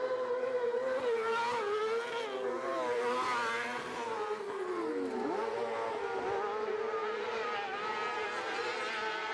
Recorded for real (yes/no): yes